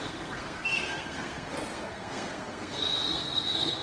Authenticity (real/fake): fake